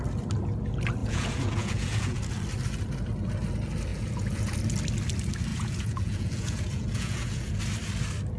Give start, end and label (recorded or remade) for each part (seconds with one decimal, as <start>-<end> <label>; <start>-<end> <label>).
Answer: 0.0-1.0 recorded; 1.0-2.2 remade; 2.2-3.9 recorded; 3.9-4.6 remade; 4.6-5.5 recorded; 5.5-7.6 remade; 7.6-8.4 recorded